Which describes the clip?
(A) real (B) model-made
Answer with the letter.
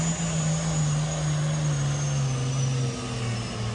A